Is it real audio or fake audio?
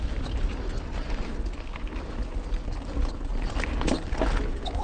real